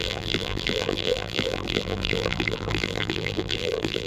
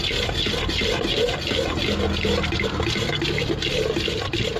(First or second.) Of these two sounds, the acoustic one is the second